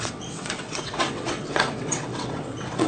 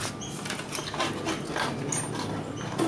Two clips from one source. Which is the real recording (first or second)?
second